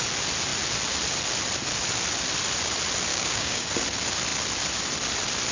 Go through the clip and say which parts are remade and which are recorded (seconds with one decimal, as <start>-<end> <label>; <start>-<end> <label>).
0.0-3.1 recorded; 3.1-3.7 remade; 3.7-5.5 recorded